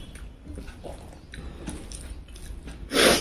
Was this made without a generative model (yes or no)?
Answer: yes